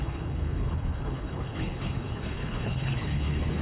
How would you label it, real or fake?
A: fake